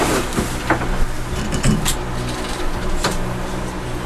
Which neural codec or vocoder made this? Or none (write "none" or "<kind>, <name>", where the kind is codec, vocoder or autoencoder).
none